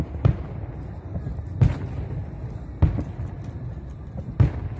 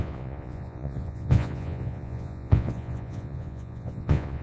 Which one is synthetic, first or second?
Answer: second